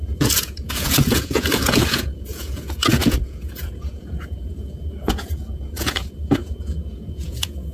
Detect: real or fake fake